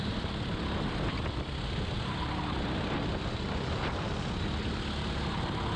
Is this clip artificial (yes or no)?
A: no